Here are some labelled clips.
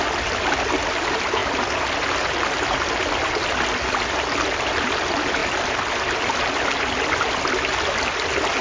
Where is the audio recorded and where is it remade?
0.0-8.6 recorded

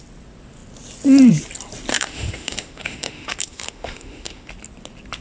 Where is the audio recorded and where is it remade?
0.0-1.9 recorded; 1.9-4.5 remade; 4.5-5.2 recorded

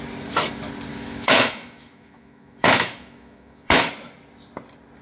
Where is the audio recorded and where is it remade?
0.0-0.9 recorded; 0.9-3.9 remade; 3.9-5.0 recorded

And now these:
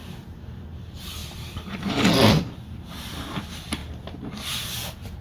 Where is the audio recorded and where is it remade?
0.0-5.2 recorded

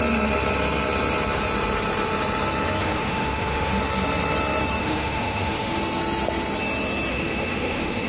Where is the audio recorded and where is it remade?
0.0-2.8 recorded; 2.8-3.8 remade; 3.8-4.8 recorded; 4.8-5.8 remade; 5.8-7.1 recorded; 7.1-8.1 remade

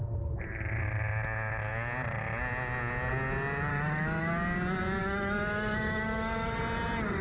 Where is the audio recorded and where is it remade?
0.0-3.7 recorded; 3.7-4.3 remade; 4.3-5.0 recorded; 5.0-6.6 remade; 6.6-7.2 recorded